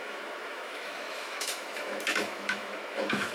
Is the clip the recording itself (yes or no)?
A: no